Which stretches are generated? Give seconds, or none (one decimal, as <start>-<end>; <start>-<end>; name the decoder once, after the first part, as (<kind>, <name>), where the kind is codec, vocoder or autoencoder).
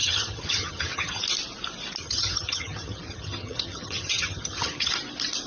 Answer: 0.0-1.2 (vocoder, HiFi-GAN); 2.0-4.9